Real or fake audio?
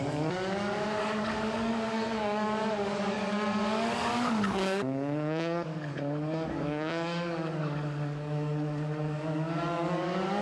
fake